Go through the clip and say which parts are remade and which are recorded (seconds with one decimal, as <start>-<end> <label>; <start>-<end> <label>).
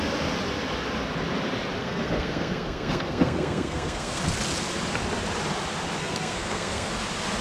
0.0-1.8 recorded; 1.8-4.2 remade; 4.2-6.0 recorded; 6.0-6.9 remade; 6.9-7.4 recorded